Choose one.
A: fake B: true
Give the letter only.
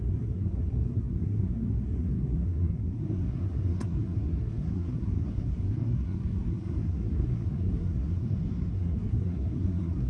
A